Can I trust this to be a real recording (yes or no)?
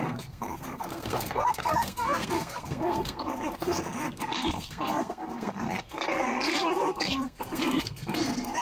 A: no